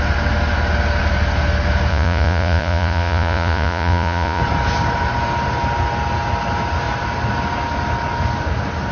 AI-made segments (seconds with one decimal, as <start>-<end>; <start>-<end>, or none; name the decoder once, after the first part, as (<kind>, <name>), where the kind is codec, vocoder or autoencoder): 1.9-4.4 (vocoder, Vocos)